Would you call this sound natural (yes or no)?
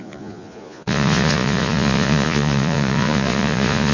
no